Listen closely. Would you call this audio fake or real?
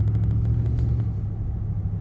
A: real